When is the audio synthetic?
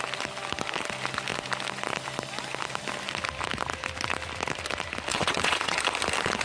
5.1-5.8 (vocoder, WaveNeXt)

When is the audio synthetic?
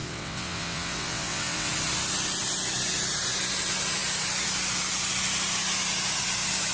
0.0-1.7 (vocoder, WaveNeXt)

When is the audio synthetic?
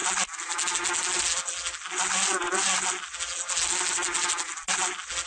none